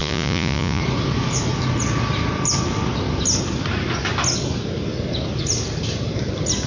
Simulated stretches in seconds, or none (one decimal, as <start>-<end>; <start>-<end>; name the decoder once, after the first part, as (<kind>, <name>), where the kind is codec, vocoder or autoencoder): 0.0-0.8 (vocoder, Vocos)